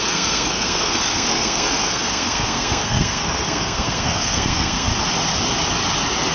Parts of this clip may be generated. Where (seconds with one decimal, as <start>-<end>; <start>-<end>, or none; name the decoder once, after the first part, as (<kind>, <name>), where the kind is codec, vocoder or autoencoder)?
0.0-4.9 (codec, SNAC)